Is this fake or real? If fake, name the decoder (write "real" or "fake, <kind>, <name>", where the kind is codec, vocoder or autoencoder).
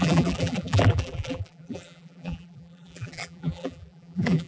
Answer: fake, vocoder, BigVGAN v2